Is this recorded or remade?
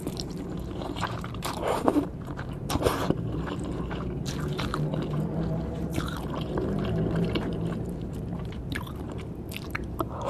remade